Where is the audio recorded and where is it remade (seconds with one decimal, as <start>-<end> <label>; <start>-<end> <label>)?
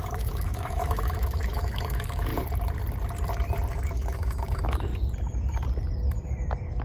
0.0-2.3 remade; 2.3-3.7 recorded; 3.7-4.9 remade; 4.9-6.8 recorded